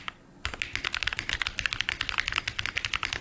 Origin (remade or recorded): recorded